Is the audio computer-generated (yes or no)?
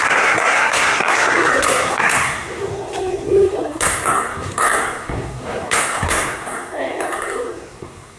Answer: yes